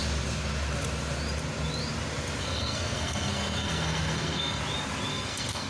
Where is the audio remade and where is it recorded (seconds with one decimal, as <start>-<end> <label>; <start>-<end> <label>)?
0.0-2.4 recorded; 2.4-4.6 remade; 4.6-5.1 recorded; 5.1-5.7 remade